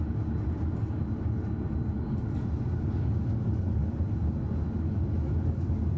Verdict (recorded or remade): recorded